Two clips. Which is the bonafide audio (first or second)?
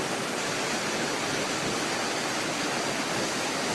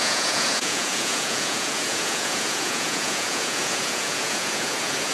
first